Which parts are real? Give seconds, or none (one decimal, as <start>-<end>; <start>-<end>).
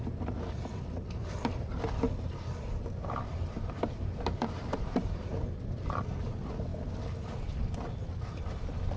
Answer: 0.0-3.0; 5.1-9.0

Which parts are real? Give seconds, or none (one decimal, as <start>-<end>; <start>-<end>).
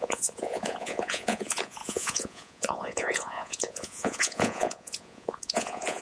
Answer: none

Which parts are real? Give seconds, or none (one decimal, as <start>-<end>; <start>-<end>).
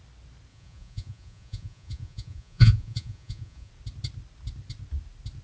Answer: 0.0-0.5; 3.7-5.4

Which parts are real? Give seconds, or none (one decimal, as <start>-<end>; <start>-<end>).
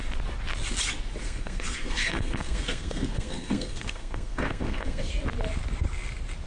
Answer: 0.0-1.2; 5.1-6.5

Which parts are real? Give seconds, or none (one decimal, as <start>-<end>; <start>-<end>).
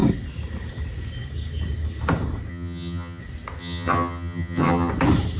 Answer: 0.0-2.5; 3.2-3.6; 4.9-5.4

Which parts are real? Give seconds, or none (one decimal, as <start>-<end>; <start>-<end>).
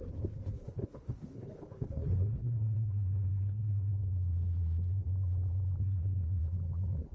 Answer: 3.9-5.8; 6.4-7.1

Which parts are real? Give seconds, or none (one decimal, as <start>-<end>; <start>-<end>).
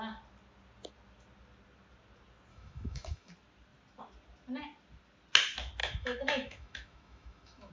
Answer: 0.0-2.5; 3.3-5.8